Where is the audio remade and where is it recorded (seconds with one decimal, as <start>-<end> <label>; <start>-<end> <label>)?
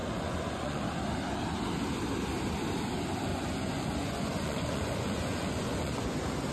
0.0-0.8 remade; 0.8-3.3 recorded; 3.3-6.1 remade; 6.1-6.5 recorded